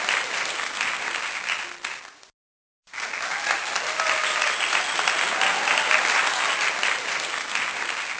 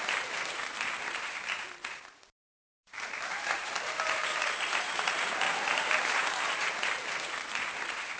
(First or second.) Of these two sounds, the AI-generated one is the second